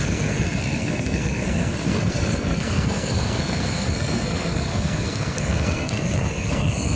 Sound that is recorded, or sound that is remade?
remade